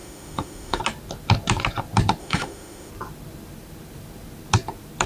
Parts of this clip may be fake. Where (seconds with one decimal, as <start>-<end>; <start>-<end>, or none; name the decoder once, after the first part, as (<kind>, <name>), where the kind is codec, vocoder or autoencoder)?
0.0-0.8 (autoencoder, DAC-VAE); 2.2-2.9